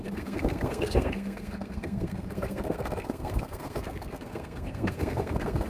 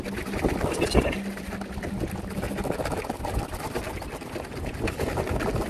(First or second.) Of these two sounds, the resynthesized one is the first